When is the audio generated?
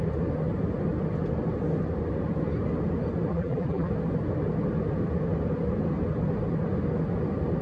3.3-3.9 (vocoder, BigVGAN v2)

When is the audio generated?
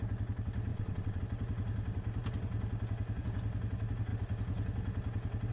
0.7-1.2 (vocoder, WaveNeXt)